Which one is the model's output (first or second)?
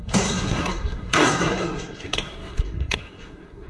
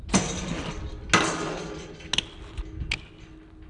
first